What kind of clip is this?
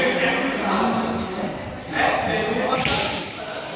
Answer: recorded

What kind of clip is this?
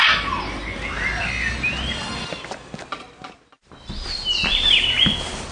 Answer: recorded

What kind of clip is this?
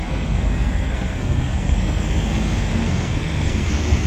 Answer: remade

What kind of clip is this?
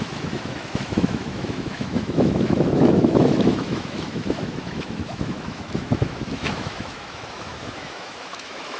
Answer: remade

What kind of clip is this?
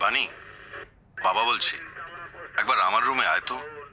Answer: recorded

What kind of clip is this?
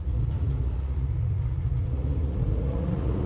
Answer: remade